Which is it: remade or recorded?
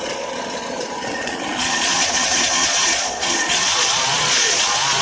remade